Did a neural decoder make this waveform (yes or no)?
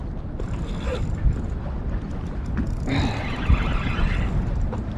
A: no